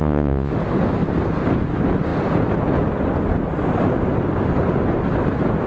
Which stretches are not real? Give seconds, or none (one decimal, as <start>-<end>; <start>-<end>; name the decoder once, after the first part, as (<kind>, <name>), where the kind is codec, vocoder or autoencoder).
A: 0.0-0.5 (vocoder, Vocos)